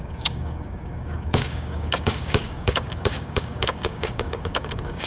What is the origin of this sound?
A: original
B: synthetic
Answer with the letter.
B